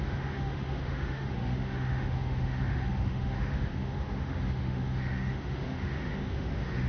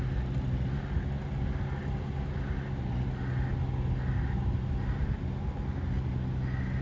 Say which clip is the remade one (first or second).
first